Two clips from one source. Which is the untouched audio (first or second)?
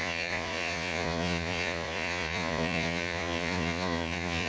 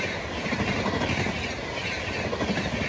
second